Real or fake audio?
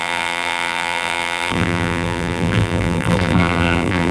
fake